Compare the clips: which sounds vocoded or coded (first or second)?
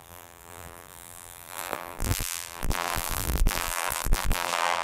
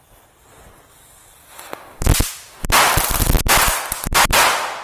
first